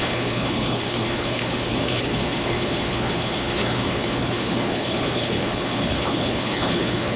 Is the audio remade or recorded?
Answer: remade